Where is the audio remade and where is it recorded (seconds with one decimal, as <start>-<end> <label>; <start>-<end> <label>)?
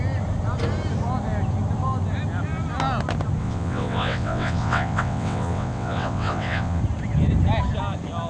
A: 0.0-3.4 recorded; 3.4-6.8 remade; 6.8-8.3 recorded